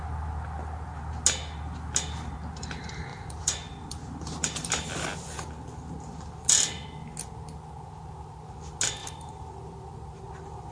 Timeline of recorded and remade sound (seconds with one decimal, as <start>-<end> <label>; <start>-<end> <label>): 0.0-3.1 recorded; 3.1-4.7 remade; 4.7-9.0 recorded; 9.0-10.2 remade; 10.2-10.7 recorded